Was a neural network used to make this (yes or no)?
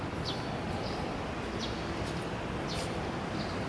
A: no